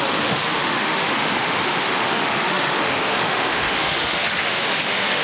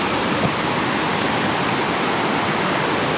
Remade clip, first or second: first